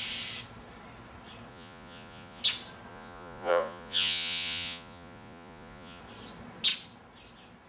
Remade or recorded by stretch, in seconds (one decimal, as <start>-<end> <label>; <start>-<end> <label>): 0.0-1.5 recorded; 1.5-2.4 remade; 2.4-2.9 recorded; 2.9-6.0 remade; 6.0-7.7 recorded